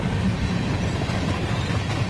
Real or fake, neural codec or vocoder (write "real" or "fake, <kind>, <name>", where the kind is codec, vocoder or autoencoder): real